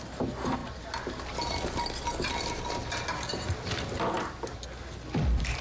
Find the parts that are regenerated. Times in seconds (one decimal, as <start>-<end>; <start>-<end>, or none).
none